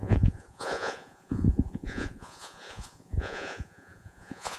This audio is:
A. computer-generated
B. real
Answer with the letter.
A